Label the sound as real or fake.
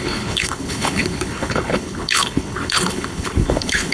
fake